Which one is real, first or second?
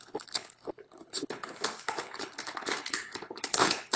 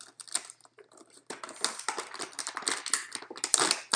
second